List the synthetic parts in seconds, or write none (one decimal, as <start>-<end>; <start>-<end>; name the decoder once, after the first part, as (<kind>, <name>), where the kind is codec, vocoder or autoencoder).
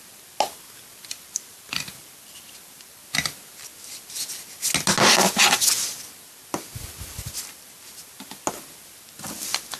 none